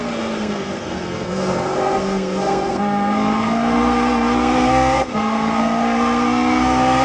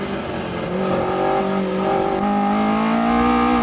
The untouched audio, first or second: second